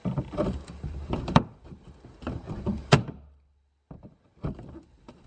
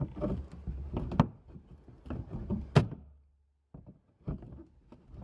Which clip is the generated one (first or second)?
first